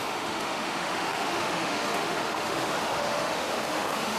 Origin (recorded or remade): remade